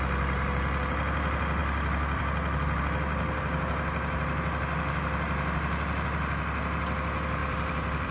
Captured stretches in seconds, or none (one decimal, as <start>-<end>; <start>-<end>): 0.0-1.6; 2.8-7.4

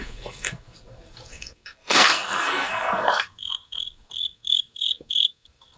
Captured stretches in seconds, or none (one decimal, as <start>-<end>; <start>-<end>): none

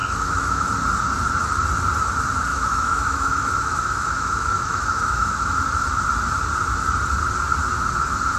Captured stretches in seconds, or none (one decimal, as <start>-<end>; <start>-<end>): 0.6-2.5; 5.6-8.4

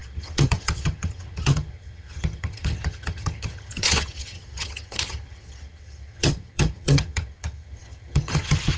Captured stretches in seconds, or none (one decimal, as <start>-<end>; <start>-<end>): none

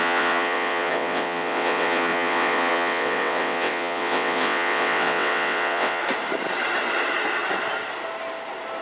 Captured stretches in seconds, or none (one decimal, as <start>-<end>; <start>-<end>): 6.0-8.8

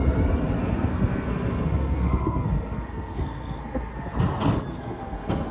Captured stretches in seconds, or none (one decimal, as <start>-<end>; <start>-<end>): 0.0-0.6; 3.9-4.7